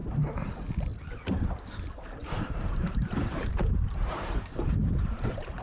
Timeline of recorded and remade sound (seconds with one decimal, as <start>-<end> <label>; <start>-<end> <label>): 0.0-2.2 recorded; 2.2-5.6 remade